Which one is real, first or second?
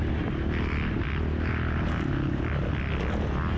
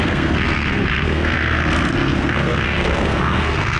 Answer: first